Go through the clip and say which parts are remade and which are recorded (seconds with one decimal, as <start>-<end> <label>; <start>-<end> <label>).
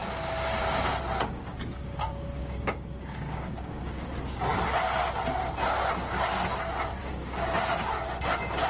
0.0-1.2 recorded; 1.2-4.1 remade; 4.1-7.0 recorded; 7.0-7.6 remade; 7.6-8.7 recorded